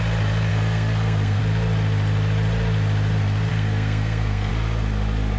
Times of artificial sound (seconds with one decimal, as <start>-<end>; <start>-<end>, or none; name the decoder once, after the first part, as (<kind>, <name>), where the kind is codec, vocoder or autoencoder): 0.5-1.4 (codec, SNAC); 3.5-4.5